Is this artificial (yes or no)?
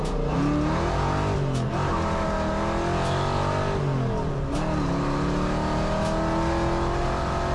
no